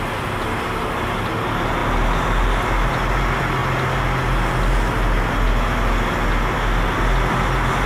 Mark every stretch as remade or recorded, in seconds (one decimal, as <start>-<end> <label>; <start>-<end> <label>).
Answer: 0.0-7.9 recorded